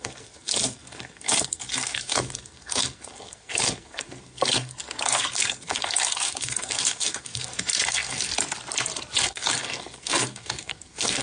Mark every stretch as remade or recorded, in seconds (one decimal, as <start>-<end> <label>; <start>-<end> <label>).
0.0-8.3 remade; 8.3-9.2 recorded; 9.2-11.2 remade